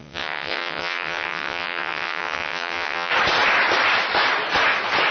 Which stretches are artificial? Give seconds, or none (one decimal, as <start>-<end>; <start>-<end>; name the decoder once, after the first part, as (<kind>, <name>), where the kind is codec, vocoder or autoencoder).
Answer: 0.0-3.1 (vocoder, WaveNeXt)